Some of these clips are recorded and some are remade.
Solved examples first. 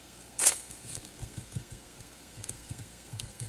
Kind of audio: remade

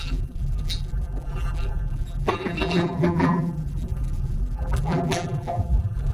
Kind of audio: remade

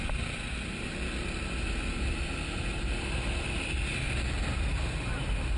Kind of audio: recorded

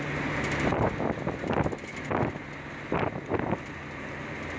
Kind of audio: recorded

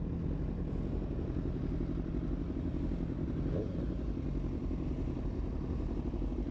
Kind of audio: recorded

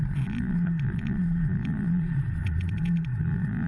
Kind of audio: remade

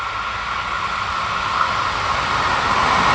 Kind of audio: recorded